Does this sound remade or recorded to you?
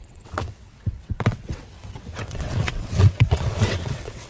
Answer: remade